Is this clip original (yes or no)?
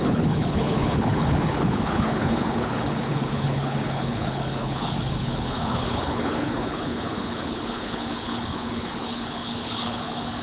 no